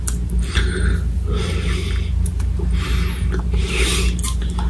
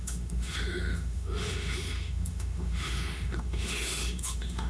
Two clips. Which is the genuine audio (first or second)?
first